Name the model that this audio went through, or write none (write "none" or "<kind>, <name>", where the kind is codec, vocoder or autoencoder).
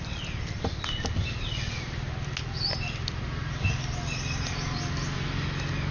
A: none